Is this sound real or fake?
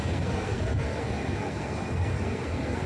fake